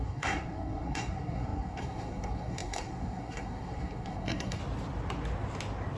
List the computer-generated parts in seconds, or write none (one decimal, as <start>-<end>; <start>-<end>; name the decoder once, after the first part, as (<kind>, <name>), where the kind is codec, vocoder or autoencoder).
0.0-4.6 (codec, SNAC)